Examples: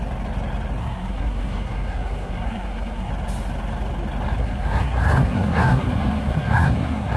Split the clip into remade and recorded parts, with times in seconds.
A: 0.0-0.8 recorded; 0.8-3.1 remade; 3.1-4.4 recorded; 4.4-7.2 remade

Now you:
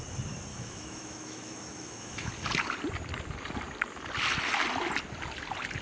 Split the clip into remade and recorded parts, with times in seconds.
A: 0.0-0.5 recorded; 0.5-2.3 remade; 2.3-5.8 recorded

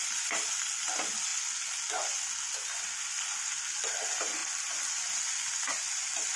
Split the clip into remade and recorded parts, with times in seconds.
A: 0.0-6.4 recorded

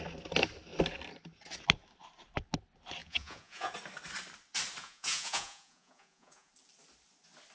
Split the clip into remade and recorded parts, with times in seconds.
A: 0.0-3.0 recorded; 3.0-3.7 remade; 3.7-4.8 recorded; 4.8-6.5 remade; 6.5-7.5 recorded